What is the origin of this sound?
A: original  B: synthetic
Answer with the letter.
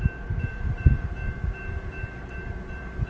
B